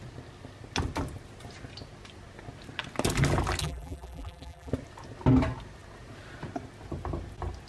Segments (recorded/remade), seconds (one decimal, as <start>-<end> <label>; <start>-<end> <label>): 0.0-3.6 recorded; 3.6-4.7 remade; 4.7-7.7 recorded